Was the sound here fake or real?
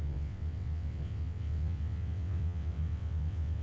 fake